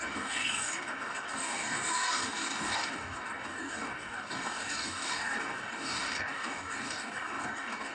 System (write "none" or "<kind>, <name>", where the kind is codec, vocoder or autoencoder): codec, DAC